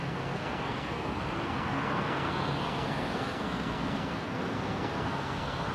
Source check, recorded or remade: remade